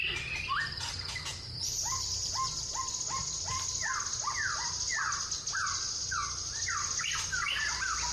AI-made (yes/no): no